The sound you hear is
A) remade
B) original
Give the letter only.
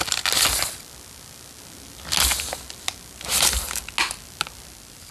B